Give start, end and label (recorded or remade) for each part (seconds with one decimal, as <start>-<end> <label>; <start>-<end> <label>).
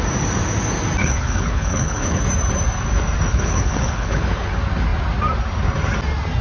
0.0-1.0 recorded; 1.0-2.2 remade; 2.2-3.3 recorded; 3.3-4.5 remade; 4.5-6.4 recorded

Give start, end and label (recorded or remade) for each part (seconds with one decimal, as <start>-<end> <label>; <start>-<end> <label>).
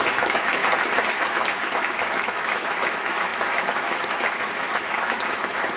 0.0-0.6 remade; 0.6-1.1 recorded; 1.1-5.8 remade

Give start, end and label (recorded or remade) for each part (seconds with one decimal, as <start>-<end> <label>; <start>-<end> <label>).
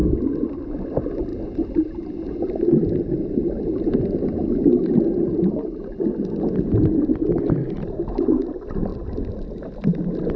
0.0-10.4 recorded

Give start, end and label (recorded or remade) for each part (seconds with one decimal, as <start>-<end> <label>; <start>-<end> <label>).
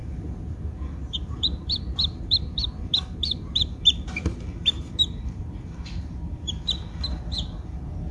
0.0-8.1 remade